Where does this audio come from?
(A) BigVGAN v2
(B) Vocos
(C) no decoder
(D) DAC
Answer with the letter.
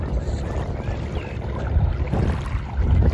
C